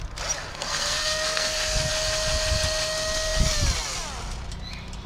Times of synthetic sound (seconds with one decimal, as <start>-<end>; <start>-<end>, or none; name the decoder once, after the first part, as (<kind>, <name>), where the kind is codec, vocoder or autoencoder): 0.5-1.9 (codec, SNAC)